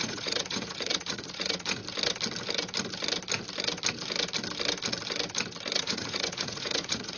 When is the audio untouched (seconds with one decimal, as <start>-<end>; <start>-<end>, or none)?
1.8-5.8